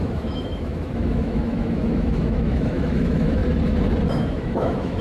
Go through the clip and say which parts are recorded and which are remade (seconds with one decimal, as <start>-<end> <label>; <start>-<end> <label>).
0.0-3.4 remade; 3.4-4.1 recorded; 4.1-5.0 remade